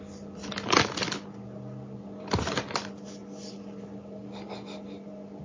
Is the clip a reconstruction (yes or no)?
no